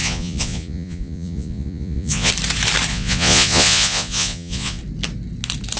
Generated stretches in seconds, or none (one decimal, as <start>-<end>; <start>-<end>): 0.0-2.3; 2.9-4.8